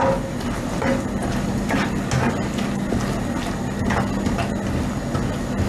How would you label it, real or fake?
real